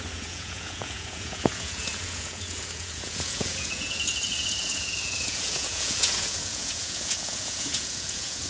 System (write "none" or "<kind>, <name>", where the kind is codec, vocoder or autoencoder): vocoder, Vocos